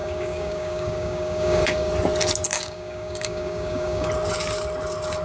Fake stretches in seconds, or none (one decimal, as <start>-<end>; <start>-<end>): 0.0-1.9; 2.5-4.1